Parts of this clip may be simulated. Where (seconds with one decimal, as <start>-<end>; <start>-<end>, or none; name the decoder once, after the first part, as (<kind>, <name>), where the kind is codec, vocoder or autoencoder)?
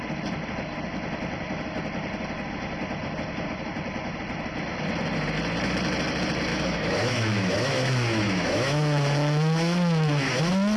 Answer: 6.5-10.4 (autoencoder, DAC-VAE)